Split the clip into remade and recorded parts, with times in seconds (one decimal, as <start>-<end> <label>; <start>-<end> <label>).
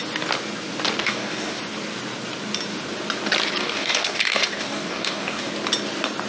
0.0-1.0 recorded; 1.0-1.6 remade; 1.6-3.6 recorded; 3.6-5.5 remade; 5.5-6.3 recorded